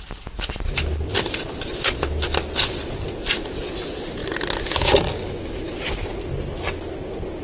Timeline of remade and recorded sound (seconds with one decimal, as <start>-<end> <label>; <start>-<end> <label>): 0.0-7.4 recorded